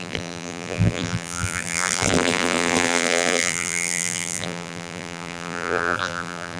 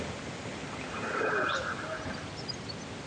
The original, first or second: second